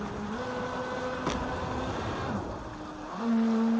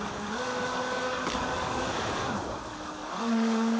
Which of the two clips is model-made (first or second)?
second